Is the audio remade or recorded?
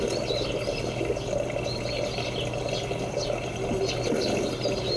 recorded